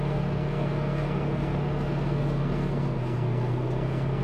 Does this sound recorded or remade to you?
remade